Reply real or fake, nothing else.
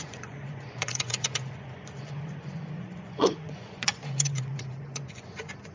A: fake